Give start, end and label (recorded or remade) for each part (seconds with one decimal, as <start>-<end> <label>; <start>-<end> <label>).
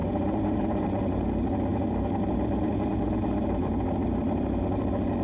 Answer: 0.0-0.9 remade; 0.9-1.7 recorded; 1.7-4.8 remade; 4.8-5.2 recorded